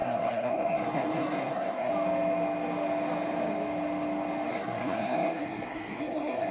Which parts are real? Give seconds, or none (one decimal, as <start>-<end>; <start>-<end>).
1.9-4.5